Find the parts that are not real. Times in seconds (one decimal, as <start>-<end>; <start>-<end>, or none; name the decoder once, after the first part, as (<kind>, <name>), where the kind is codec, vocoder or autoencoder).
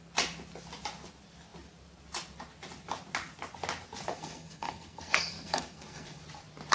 4.1-6.2 (codec, SNAC)